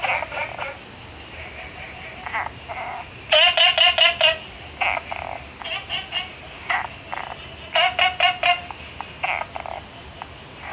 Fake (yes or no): no